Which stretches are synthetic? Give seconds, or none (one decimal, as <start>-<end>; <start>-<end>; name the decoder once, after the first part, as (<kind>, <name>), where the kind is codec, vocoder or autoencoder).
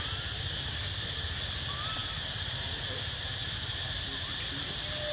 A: none